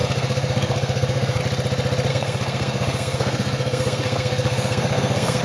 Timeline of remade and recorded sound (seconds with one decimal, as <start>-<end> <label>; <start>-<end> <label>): 0.0-1.4 remade; 1.4-2.1 recorded; 2.1-5.4 remade